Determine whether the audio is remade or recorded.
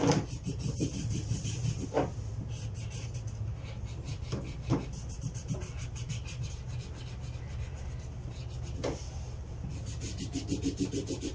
recorded